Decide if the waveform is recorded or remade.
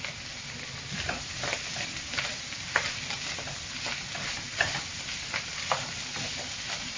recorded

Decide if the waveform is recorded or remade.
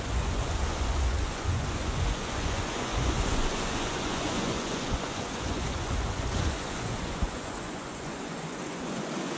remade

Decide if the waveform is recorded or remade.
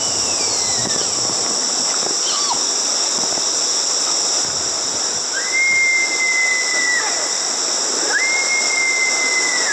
recorded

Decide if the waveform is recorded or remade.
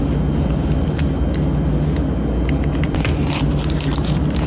recorded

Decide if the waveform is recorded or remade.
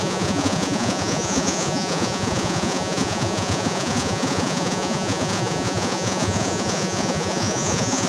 remade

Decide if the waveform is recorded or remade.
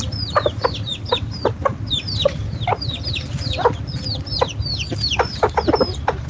recorded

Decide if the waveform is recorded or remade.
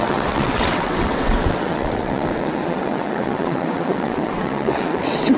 remade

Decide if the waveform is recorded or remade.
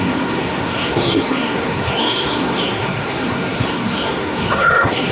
remade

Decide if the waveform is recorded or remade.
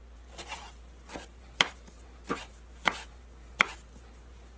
recorded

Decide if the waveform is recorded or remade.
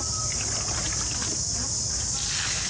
recorded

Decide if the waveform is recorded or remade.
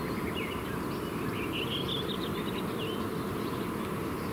recorded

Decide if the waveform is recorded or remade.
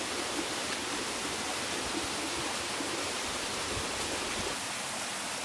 recorded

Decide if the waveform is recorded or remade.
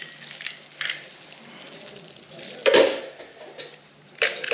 remade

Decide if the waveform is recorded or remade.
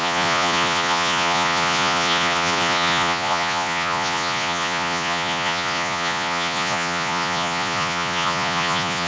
remade